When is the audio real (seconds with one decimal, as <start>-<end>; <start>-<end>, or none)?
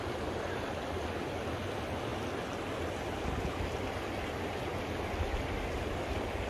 0.0-2.1; 3.5-6.5